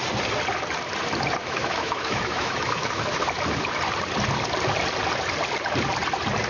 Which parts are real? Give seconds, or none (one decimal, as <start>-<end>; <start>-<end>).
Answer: 0.0-1.4; 3.2-6.5